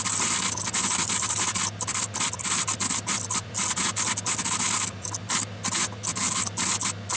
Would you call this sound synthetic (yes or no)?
no